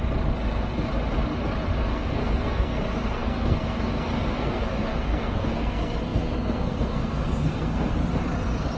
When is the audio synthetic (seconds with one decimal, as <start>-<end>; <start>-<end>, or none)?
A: 1.8-8.0

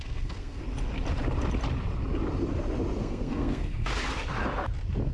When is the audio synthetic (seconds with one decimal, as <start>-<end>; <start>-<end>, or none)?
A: 0.0-0.6; 3.0-3.9

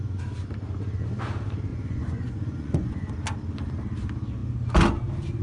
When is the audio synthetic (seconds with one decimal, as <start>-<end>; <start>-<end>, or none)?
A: 1.7-3.1

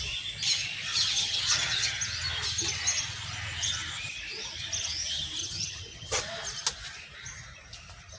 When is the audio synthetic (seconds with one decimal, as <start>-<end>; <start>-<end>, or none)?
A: 0.9-2.0; 5.4-6.2

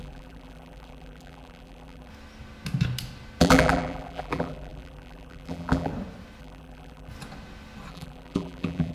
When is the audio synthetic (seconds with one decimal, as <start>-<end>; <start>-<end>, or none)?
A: 0.0-2.1; 3.4-5.9; 6.4-7.1; 7.9-8.9

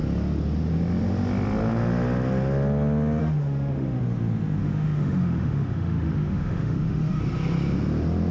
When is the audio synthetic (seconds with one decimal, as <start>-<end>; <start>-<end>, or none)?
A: 3.2-4.0; 4.6-7.2

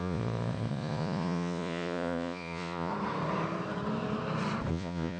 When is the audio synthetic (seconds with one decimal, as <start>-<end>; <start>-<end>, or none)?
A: 0.0-2.9; 4.7-5.2